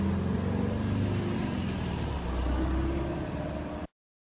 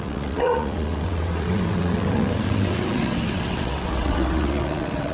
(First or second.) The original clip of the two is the first